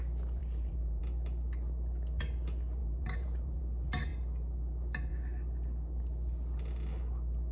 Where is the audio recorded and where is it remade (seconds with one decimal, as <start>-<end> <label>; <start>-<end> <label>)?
0.0-0.4 recorded; 0.4-1.0 remade; 1.0-2.8 recorded; 2.8-3.6 remade; 3.6-7.5 recorded